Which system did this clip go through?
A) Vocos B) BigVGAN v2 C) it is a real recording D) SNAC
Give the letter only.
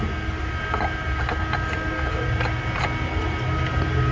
C